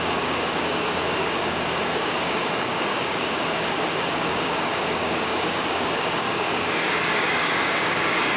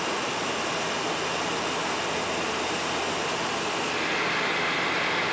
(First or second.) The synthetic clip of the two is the first